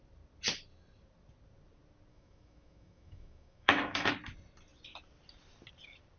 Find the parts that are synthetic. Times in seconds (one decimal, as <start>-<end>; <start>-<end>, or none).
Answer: 2.1-4.1